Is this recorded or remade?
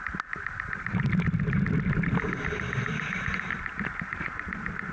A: recorded